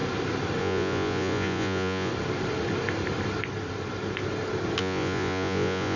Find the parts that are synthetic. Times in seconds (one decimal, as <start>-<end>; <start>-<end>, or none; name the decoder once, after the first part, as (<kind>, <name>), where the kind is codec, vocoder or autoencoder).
0.6-2.1 (vocoder, Vocos); 4.8-6.0